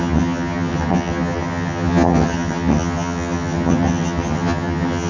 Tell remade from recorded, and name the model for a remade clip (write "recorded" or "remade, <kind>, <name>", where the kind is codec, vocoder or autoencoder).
remade, vocoder, HiFi-GAN